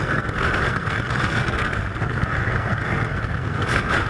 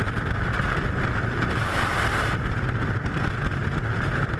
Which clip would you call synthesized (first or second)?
first